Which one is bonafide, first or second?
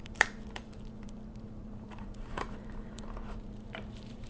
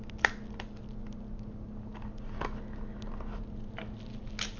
second